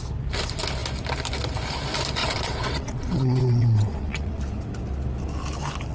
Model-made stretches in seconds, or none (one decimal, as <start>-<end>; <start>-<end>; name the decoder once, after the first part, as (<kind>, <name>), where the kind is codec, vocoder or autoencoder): 2.2-4.4 (vocoder, WaveNeXt)